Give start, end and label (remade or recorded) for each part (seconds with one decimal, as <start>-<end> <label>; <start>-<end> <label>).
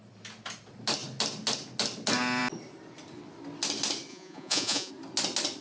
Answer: 0.0-4.1 recorded; 4.1-4.9 remade; 4.9-5.6 recorded